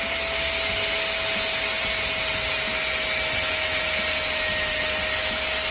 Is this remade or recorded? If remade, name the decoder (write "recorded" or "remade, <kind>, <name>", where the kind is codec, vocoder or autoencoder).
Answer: recorded